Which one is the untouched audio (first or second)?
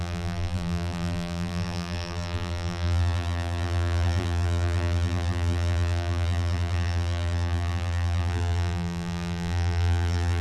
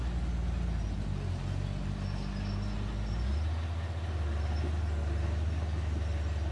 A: second